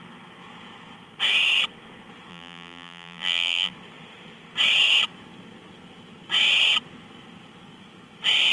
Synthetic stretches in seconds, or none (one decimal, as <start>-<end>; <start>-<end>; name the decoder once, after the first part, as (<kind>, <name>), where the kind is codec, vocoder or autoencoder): 2.3-3.7 (vocoder, BigVGAN v2)